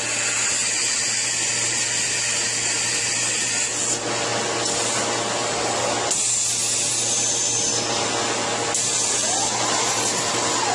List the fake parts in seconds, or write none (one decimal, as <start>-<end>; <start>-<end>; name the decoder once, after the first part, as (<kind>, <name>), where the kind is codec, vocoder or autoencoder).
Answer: none